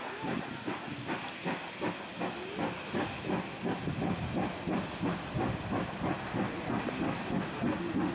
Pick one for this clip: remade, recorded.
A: recorded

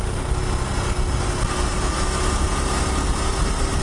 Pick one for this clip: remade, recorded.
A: recorded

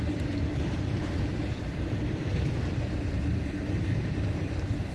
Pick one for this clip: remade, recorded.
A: remade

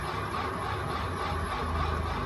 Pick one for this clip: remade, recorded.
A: recorded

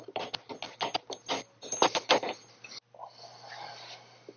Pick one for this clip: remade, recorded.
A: recorded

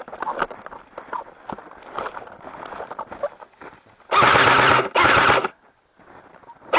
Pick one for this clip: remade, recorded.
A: recorded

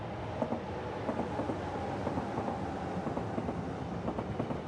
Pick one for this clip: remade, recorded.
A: recorded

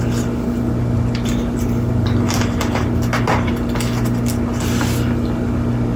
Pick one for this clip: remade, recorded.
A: recorded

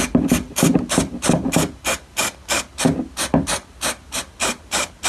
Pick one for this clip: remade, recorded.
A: recorded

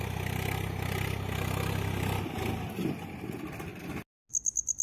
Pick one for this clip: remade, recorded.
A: recorded